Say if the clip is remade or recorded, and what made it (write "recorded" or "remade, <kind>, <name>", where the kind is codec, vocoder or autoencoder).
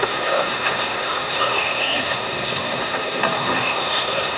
remade, codec, SNAC